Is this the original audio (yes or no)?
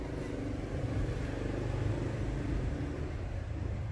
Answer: no